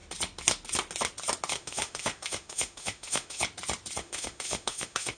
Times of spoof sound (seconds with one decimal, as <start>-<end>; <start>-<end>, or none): 1.5-3.4; 4.0-5.2